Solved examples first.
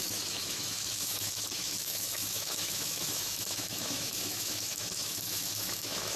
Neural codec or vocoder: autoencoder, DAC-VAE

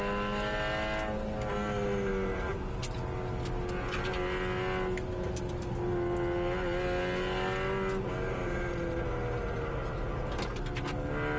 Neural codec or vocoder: none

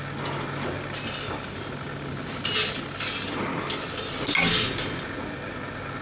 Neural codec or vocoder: none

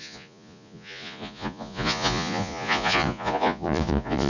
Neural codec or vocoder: vocoder, Vocos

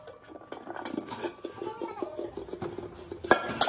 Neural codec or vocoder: none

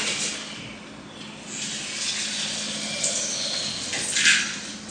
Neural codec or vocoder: none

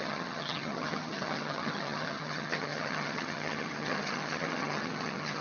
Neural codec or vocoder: vocoder, HiFi-GAN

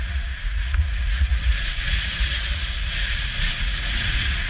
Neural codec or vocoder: vocoder, Vocos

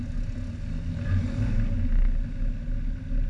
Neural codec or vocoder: none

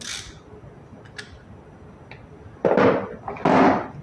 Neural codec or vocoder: none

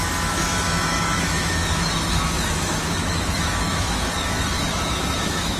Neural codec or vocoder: autoencoder, DAC-VAE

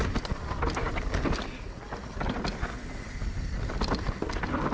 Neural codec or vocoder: none